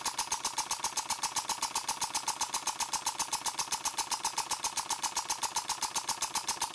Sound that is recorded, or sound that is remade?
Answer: recorded